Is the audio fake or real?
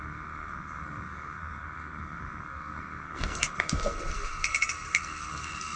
fake